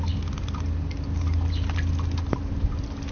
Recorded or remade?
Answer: recorded